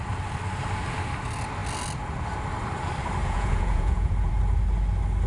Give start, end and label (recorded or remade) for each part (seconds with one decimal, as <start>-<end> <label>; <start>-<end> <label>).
0.0-3.2 recorded; 3.2-4.3 remade; 4.3-5.3 recorded